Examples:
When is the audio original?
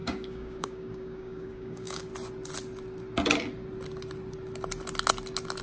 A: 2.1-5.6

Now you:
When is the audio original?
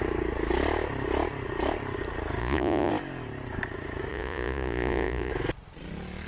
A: 0.0-2.4; 2.9-4.1; 5.3-6.3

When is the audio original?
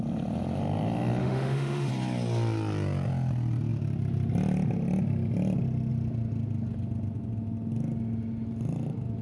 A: 0.0-1.2; 1.9-9.2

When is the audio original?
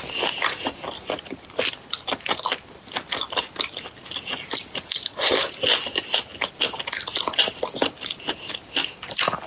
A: 0.0-9.5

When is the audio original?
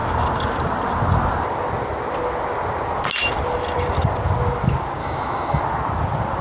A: 0.0-5.0; 5.6-6.4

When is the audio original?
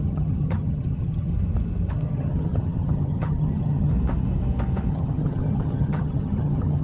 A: 1.3-1.9; 3.9-4.9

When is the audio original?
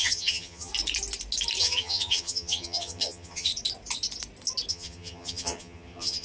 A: 0.7-1.6; 3.5-4.7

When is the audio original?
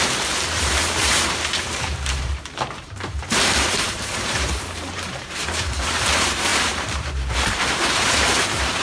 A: none